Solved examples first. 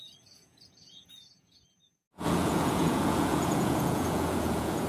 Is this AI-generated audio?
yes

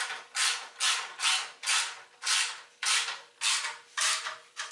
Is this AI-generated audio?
no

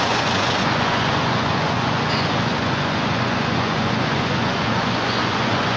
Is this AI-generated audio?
yes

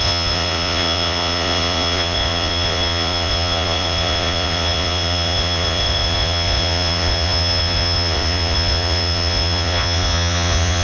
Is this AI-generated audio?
yes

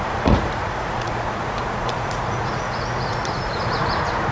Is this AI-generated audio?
yes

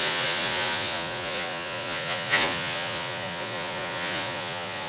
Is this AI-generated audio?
yes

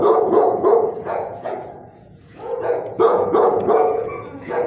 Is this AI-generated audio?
yes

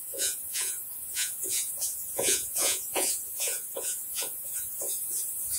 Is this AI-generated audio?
yes